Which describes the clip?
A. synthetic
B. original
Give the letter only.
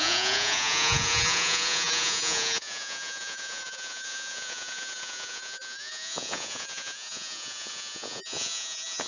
A